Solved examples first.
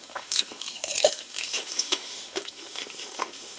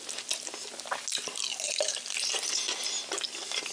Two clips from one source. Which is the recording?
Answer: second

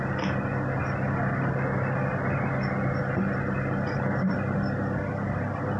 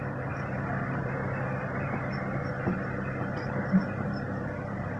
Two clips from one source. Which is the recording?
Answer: first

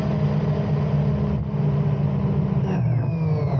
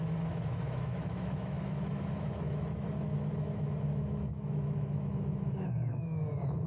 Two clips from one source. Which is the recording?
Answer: first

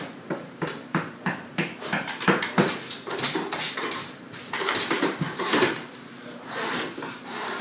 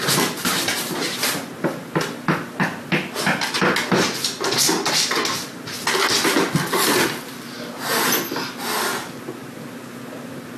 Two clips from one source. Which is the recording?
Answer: second